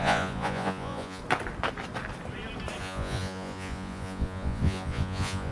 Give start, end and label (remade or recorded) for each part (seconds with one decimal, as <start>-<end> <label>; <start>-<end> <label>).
0.0-1.2 remade; 1.2-2.8 recorded; 2.8-5.5 remade